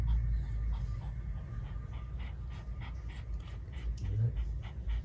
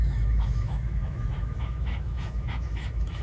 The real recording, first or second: first